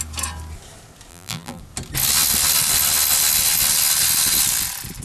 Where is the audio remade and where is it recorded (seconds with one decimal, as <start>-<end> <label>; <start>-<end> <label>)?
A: 0.0-1.1 recorded; 1.1-1.6 remade; 1.6-5.0 recorded